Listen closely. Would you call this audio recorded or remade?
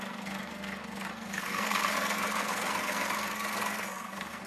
remade